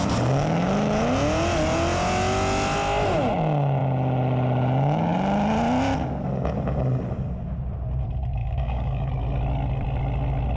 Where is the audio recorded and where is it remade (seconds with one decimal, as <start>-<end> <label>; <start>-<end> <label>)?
0.0-8.4 recorded; 8.4-9.1 remade; 9.1-10.6 recorded